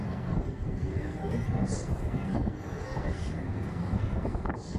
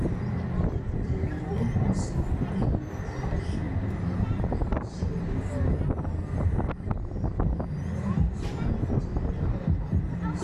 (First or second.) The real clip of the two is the second